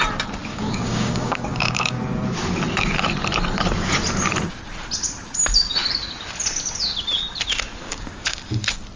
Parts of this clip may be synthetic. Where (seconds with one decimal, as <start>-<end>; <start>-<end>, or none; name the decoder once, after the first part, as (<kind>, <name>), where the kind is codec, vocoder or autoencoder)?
0.5-2.0 (codec, DAC); 7.8-8.4